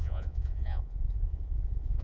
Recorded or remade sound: remade